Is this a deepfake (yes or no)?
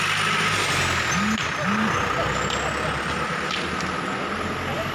no